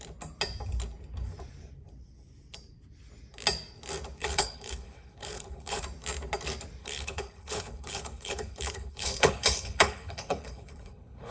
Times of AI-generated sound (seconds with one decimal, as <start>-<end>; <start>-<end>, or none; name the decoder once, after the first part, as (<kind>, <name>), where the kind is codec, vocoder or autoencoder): 4.2-5.8 (codec, HILCodec); 6.8-11.3